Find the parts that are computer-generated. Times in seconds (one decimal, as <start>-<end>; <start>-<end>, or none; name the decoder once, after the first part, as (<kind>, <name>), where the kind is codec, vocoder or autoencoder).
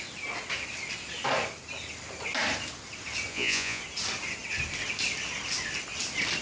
3.3-3.8 (vocoder, Vocos)